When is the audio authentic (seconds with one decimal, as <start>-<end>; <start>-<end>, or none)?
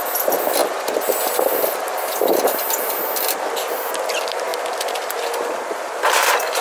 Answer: 0.0-6.6